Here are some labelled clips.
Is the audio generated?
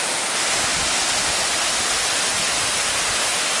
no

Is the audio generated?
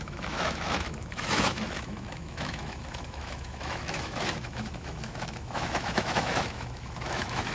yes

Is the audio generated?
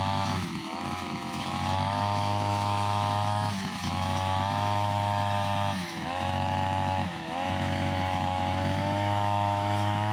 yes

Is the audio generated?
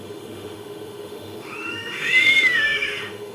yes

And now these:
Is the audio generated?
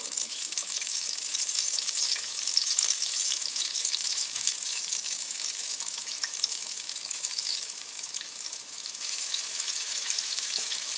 yes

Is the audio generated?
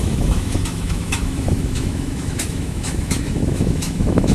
yes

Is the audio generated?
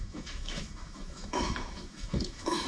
yes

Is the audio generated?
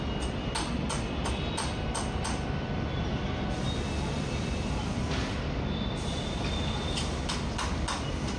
no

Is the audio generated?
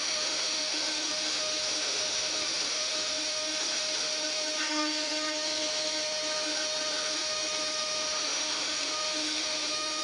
yes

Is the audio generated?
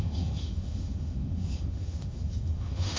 yes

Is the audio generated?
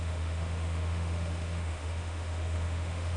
yes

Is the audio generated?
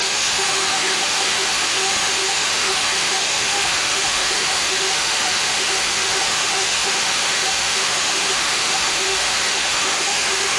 yes